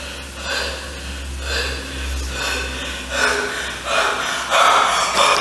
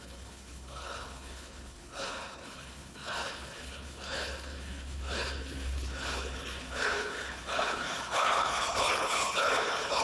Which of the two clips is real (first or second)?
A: first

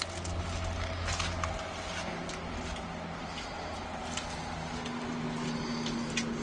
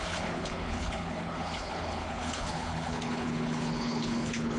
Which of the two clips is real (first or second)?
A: first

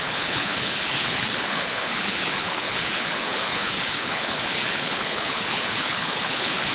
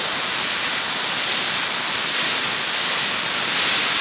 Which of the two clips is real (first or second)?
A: second